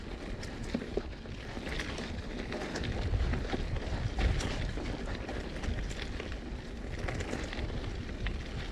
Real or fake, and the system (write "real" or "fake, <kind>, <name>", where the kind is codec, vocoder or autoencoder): real